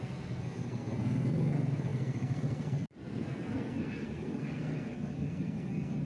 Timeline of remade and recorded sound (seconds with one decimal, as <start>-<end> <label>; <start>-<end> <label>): 0.0-6.1 remade